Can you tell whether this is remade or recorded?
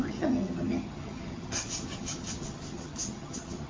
remade